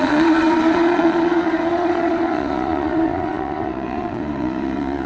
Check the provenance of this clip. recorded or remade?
remade